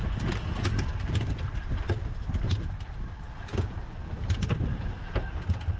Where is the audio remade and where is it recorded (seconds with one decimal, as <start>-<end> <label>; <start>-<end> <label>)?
0.0-5.8 recorded